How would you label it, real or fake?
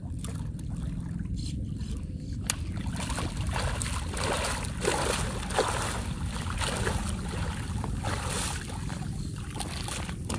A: real